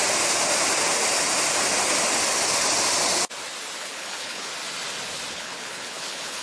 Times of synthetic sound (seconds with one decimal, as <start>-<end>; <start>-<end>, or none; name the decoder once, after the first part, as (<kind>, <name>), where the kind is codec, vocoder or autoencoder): 3.8-4.5 (codec, HILCodec); 5.3-6.4